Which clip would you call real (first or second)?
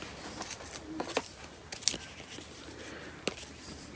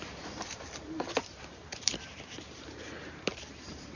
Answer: first